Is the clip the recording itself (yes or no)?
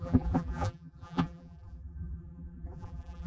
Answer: no